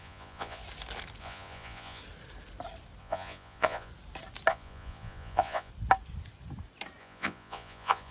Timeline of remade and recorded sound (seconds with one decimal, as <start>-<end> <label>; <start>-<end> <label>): 0.0-0.6 remade; 0.6-1.2 recorded; 1.2-2.0 remade; 2.0-3.0 recorded; 3.0-3.9 remade; 3.9-4.5 recorded; 4.5-5.7 remade; 5.7-7.0 recorded; 7.0-8.1 remade